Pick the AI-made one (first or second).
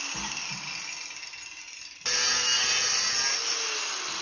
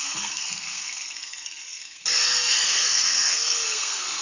second